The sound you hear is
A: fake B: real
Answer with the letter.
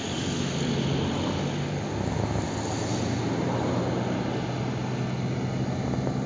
B